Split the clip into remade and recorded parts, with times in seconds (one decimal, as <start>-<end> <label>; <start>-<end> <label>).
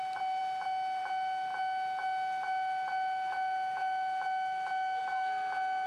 0.0-5.9 recorded